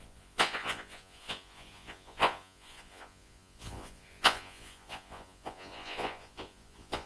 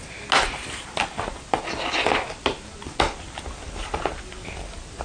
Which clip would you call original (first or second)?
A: second